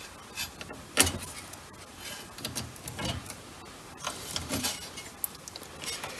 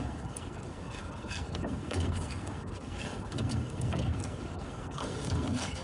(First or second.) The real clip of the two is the first